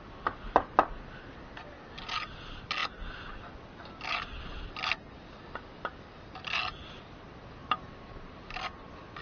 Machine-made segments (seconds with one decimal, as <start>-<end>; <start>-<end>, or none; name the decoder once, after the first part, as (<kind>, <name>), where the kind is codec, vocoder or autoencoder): 7.6-8.5 (vocoder, BigVGAN v2)